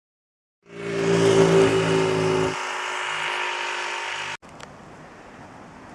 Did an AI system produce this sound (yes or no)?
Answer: no